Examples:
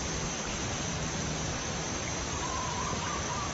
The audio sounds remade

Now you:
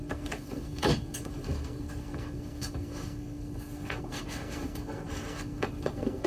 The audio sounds remade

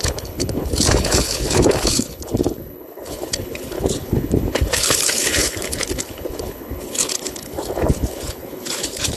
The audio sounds remade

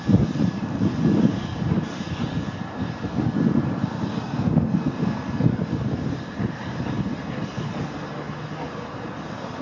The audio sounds recorded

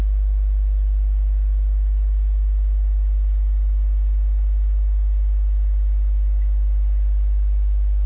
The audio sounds recorded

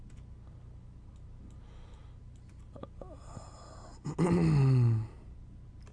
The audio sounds recorded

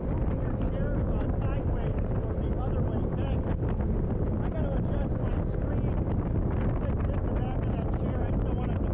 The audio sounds recorded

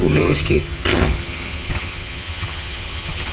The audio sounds remade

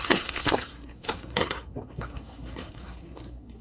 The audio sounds remade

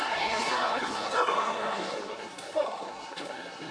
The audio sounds remade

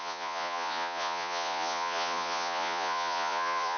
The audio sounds remade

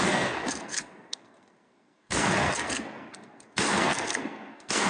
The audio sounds remade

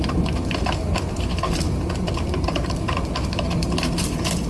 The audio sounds remade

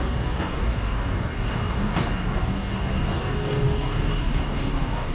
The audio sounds remade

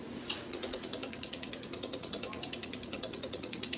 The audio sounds remade